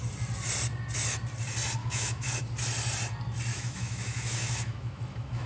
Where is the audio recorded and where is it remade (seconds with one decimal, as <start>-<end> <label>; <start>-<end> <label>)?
0.0-1.8 recorded; 1.8-2.3 remade; 2.3-3.5 recorded; 3.5-5.5 remade